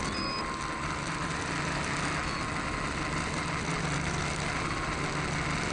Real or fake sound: real